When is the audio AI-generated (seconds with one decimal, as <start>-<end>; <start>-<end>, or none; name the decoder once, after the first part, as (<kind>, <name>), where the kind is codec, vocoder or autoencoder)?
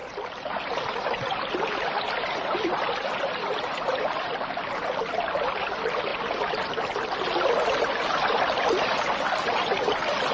none